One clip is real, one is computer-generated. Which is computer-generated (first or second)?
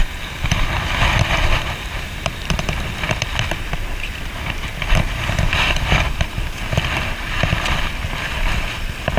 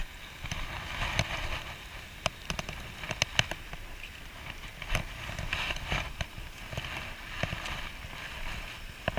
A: first